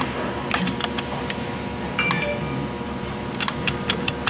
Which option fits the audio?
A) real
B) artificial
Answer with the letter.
A